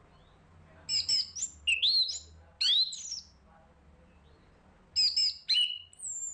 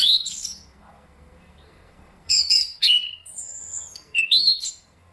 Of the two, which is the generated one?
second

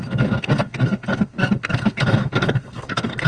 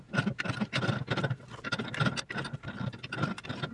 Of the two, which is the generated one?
first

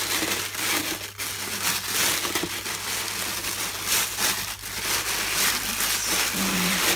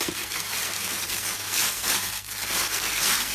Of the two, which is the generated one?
second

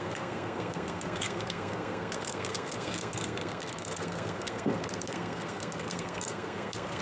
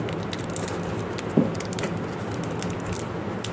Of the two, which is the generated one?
first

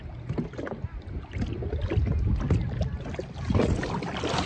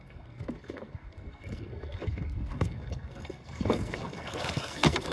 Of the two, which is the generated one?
second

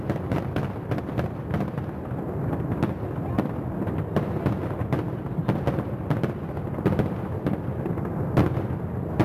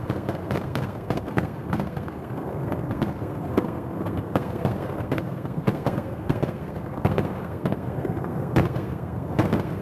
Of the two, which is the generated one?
second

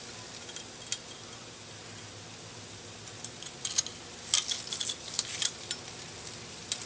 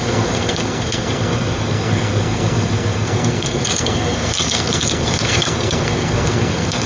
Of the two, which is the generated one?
second